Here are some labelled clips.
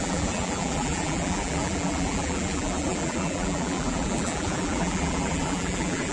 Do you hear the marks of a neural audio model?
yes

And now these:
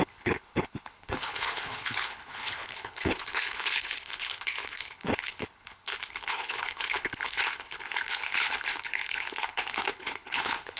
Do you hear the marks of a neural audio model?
yes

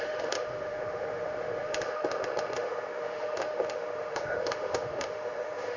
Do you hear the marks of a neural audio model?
yes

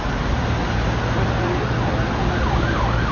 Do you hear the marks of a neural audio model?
no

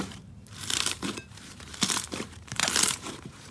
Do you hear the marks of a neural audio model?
yes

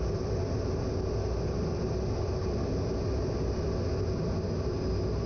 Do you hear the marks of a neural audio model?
no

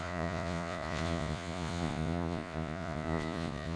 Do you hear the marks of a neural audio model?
yes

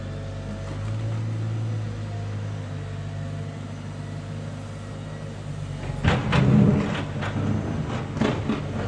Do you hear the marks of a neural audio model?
no